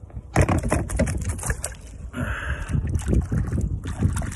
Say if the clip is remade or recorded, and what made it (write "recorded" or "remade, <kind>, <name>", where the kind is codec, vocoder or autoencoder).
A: recorded